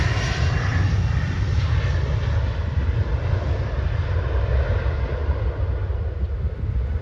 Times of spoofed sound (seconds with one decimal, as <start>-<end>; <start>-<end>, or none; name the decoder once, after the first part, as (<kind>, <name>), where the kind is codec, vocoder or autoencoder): none